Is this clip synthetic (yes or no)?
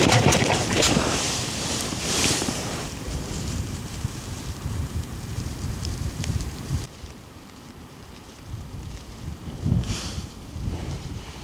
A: yes